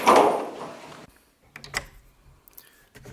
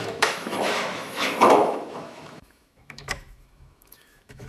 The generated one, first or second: second